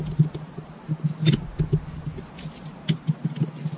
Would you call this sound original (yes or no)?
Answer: yes